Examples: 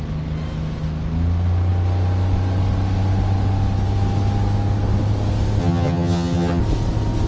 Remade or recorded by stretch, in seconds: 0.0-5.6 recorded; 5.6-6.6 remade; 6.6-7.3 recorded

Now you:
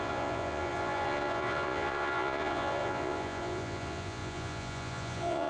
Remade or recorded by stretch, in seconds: 0.0-5.5 remade

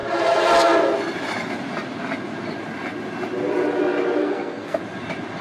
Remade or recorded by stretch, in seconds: 0.0-4.2 recorded; 4.2-4.8 remade; 4.8-5.4 recorded